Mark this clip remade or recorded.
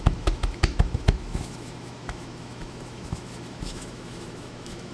remade